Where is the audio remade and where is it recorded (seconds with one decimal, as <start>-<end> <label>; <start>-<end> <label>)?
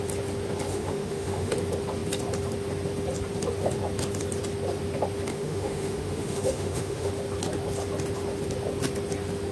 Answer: 0.0-0.7 recorded; 0.7-1.5 remade; 1.5-5.3 recorded; 5.3-7.1 remade; 7.1-9.5 recorded